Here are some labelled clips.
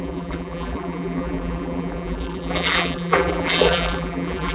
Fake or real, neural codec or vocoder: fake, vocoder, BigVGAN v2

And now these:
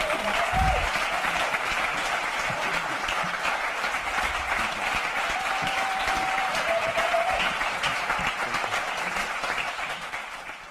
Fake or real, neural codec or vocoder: fake, vocoder, BigVGAN v2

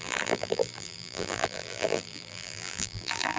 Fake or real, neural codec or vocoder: fake, vocoder, BigVGAN v2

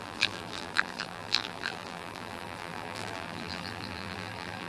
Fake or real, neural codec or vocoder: fake, vocoder, BigVGAN v2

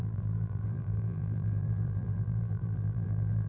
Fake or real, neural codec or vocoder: fake, vocoder, BigVGAN v2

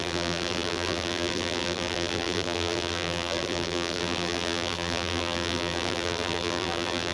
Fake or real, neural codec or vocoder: fake, vocoder, BigVGAN v2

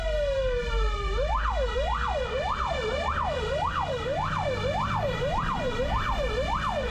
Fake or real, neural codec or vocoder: fake, vocoder, BigVGAN v2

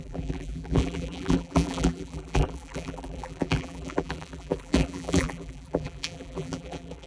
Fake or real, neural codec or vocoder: fake, vocoder, BigVGAN v2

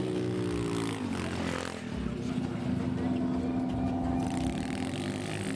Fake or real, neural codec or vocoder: real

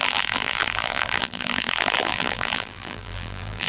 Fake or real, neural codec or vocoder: fake, vocoder, BigVGAN v2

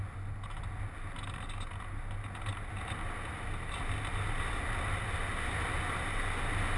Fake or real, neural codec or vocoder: real